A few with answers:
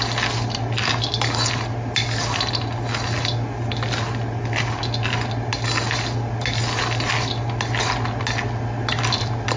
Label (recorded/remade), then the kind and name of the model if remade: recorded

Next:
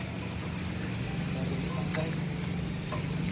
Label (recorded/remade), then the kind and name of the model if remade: recorded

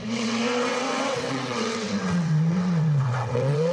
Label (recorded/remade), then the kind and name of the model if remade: remade, vocoder, WaveNeXt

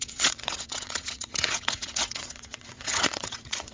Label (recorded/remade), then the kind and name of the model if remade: remade, vocoder, WaveNeXt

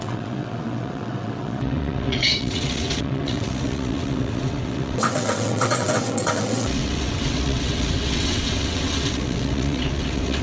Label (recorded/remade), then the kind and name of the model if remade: remade, vocoder, WaveNeXt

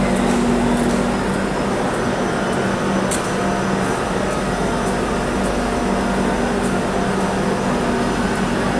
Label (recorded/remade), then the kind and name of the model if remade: recorded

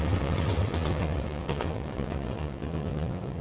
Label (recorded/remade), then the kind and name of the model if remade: remade, vocoder, WaveNeXt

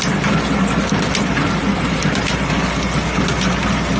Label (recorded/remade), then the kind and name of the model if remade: recorded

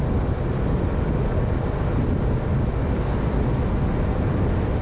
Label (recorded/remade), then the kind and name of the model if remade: recorded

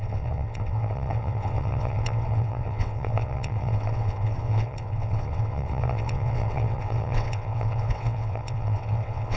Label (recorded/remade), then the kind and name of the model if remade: remade, vocoder, WaveNeXt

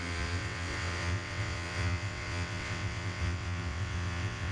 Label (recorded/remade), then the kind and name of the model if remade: remade, vocoder, WaveNeXt